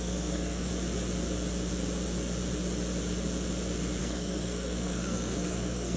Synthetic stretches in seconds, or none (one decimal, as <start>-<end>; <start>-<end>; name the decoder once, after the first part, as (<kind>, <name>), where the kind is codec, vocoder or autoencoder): 0.0-0.7 (codec, SNAC); 4.0-6.0